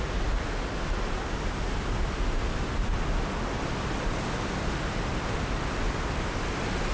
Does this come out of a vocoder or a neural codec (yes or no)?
no